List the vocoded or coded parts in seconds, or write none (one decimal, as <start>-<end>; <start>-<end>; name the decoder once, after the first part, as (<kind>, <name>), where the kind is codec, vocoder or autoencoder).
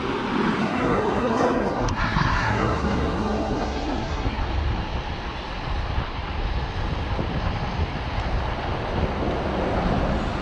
0.6-4.4 (codec, SNAC)